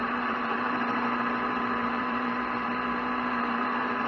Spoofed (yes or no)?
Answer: yes